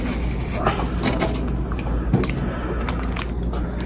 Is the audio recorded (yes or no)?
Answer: yes